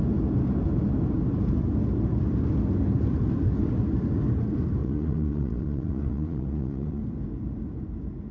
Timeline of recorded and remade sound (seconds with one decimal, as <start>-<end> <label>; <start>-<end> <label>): 0.0-4.8 recorded; 4.8-7.0 remade; 7.0-8.3 recorded

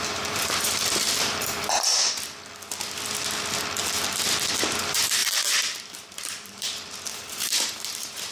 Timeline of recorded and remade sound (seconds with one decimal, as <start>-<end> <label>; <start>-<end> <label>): 0.0-1.9 remade; 1.9-4.6 recorded; 4.6-8.3 remade

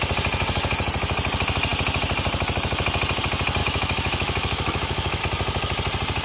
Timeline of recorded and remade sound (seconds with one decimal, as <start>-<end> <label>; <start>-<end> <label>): 0.0-3.6 recorded; 3.6-5.2 remade; 5.2-6.2 recorded

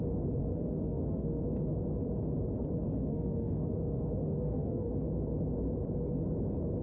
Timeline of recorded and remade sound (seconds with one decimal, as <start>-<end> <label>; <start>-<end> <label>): 0.0-0.4 recorded; 0.4-1.4 remade; 1.4-3.0 recorded; 3.0-4.9 remade; 4.9-6.8 recorded

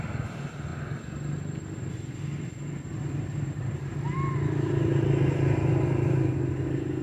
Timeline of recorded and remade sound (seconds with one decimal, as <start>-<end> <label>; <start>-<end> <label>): 0.0-2.9 recorded; 2.9-3.9 remade; 3.9-7.0 recorded

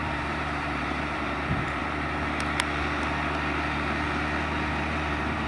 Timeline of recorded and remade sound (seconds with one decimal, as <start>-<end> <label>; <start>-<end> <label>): 0.0-1.8 remade; 1.8-5.1 recorded; 5.1-5.5 remade

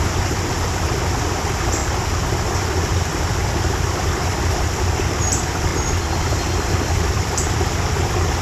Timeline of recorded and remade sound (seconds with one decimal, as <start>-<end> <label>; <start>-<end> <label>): 0.0-5.7 remade; 5.7-6.2 recorded; 6.2-8.4 remade

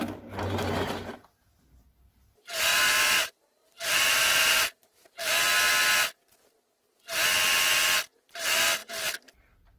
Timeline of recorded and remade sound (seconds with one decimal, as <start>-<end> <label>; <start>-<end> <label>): 0.0-2.7 recorded; 2.7-5.1 remade; 5.1-9.8 recorded